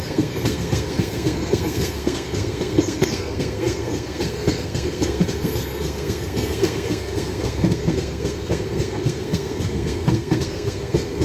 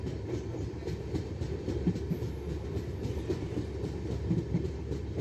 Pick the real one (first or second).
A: second